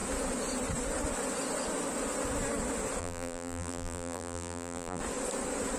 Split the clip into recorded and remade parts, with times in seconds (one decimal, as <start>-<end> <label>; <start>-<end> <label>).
0.0-3.0 recorded; 3.0-5.0 remade; 5.0-5.8 recorded